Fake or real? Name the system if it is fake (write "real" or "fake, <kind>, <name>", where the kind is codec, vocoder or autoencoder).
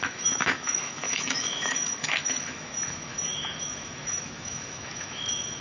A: fake, autoencoder, DAC-VAE